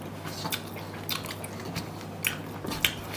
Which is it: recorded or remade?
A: recorded